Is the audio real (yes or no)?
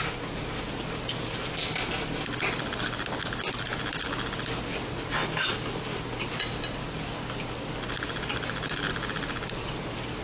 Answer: yes